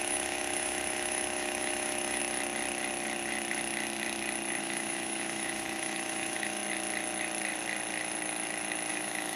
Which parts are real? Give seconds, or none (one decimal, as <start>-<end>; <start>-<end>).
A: 2.2-4.6; 6.6-8.9